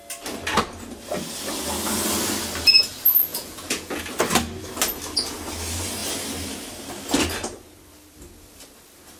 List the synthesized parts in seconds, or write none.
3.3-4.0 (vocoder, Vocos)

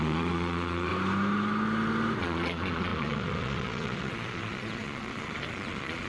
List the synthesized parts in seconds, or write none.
0.0-0.9 (vocoder, Vocos); 2.2-6.1